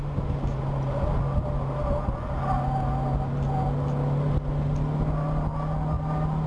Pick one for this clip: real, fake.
real